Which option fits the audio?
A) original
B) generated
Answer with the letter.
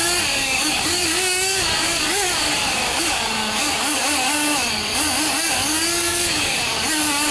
B